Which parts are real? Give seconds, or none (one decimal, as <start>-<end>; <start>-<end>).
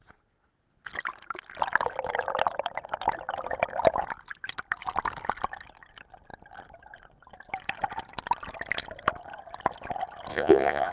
0.0-10.3